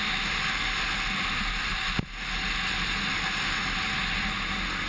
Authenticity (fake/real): real